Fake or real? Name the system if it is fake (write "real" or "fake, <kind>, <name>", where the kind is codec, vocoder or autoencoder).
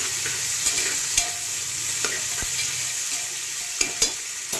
fake, vocoder, Vocos